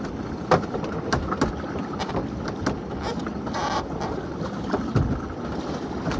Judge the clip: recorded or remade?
recorded